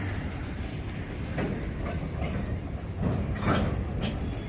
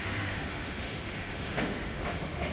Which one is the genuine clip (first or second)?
first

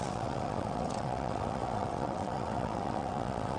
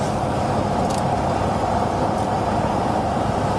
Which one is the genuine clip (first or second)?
second